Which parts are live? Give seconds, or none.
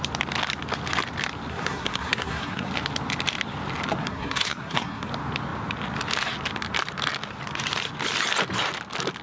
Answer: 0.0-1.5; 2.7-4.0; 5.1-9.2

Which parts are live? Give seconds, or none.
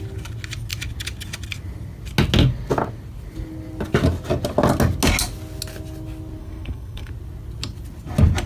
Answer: 0.0-6.4; 7.1-8.5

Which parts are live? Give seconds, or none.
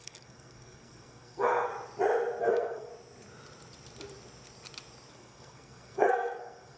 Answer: 1.7-2.4; 2.9-5.1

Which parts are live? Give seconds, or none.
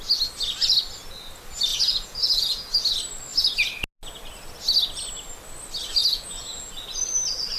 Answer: 0.0-1.7; 2.7-6.0; 6.7-7.6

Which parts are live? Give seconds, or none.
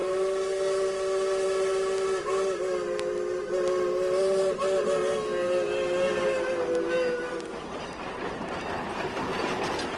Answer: 0.0-10.0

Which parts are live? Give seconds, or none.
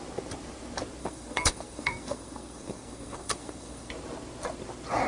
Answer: 0.0-1.0; 3.9-5.1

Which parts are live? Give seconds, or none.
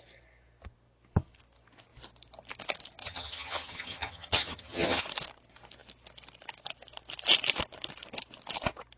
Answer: 0.0-3.0; 5.0-9.0